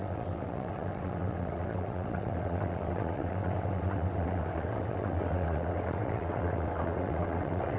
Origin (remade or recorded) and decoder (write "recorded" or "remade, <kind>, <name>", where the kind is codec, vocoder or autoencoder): remade, vocoder, WaveNeXt